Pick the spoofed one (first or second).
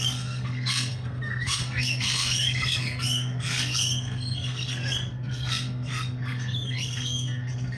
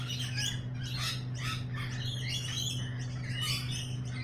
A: first